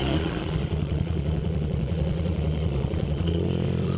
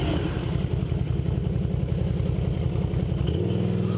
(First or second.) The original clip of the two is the second